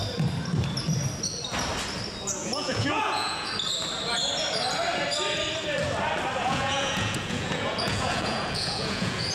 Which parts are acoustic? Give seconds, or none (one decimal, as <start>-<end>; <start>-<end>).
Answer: 0.0-2.4; 3.5-6.4